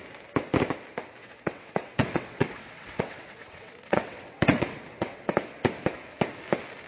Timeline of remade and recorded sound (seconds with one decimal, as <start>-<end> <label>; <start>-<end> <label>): 0.0-1.2 recorded; 1.2-5.3 remade; 5.3-6.9 recorded